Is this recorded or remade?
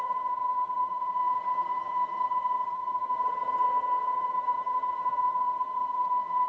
remade